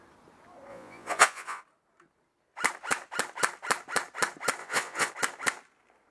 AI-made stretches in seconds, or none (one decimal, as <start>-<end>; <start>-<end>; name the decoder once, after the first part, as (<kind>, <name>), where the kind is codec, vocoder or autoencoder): 0.7-1.6 (vocoder, Vocos); 4.6-5.1